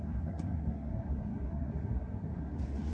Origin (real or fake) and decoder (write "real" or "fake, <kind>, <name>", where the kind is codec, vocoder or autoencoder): fake, codec, SNAC